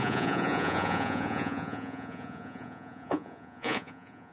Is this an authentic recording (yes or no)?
no